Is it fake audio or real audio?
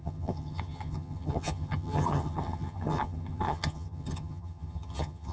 fake